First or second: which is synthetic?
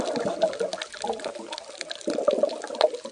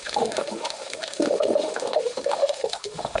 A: second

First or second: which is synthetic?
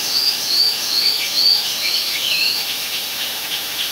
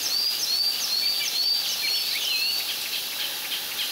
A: first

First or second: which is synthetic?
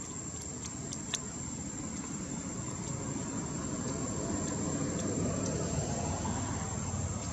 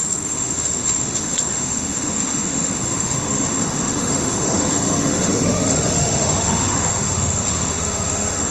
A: second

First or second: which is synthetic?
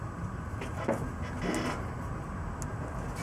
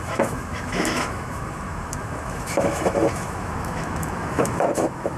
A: second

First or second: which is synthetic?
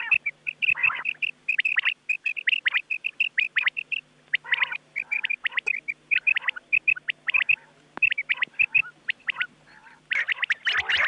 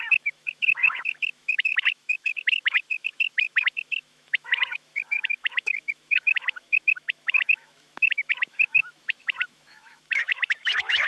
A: second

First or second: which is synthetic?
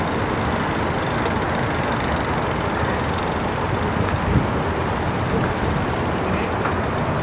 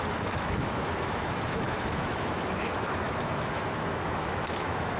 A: second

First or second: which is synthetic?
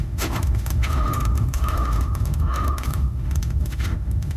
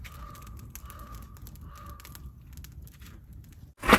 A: first